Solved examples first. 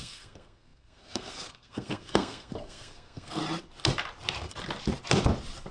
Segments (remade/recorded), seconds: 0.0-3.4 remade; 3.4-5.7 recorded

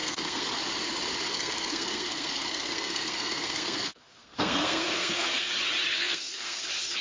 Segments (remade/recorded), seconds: 0.0-0.6 remade; 0.6-1.3 recorded; 1.3-5.5 remade; 5.5-5.9 recorded; 5.9-6.6 remade; 6.6-7.0 recorded

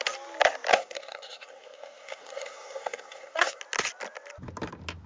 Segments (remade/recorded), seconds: 0.0-0.7 recorded; 0.7-3.6 remade; 3.6-5.1 recorded